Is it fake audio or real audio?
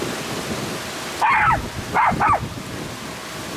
real